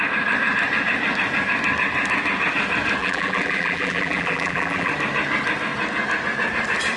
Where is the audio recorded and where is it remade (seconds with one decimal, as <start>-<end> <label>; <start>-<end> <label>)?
0.0-3.0 recorded; 3.0-4.9 remade; 4.9-7.0 recorded